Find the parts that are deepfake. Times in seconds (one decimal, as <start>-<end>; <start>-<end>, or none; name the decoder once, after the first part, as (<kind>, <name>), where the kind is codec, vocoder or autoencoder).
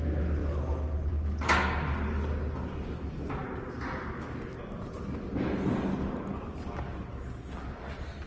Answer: none